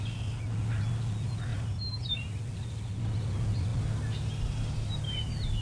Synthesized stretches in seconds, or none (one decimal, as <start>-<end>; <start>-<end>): 1.5-2.4